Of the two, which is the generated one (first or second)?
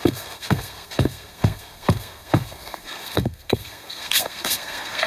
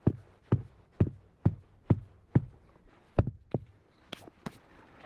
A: first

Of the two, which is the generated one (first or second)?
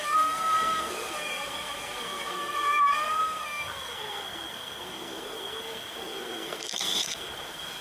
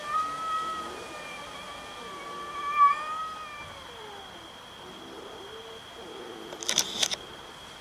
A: first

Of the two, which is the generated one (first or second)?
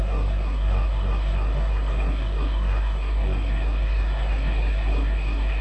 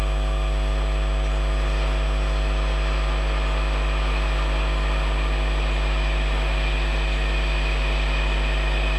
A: first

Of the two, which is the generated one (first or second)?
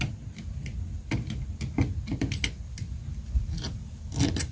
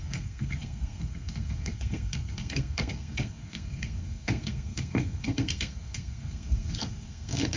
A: second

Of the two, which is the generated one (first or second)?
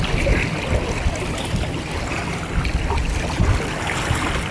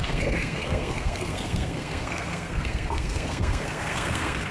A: second